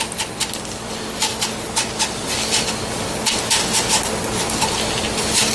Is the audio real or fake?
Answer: real